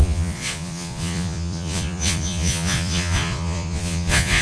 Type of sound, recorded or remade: remade